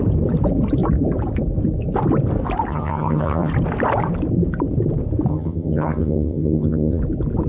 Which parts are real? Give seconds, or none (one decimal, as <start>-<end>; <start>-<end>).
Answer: 0.0-2.7; 3.5-5.3; 7.0-7.5